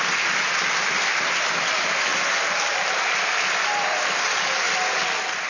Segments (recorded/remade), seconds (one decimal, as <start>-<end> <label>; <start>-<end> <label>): 0.0-5.5 recorded